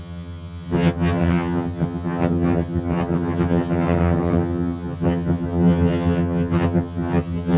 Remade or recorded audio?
remade